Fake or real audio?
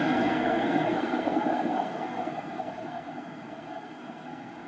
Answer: fake